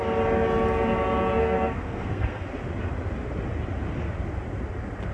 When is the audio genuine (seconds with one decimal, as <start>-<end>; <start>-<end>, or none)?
0.0-1.4; 2.4-5.1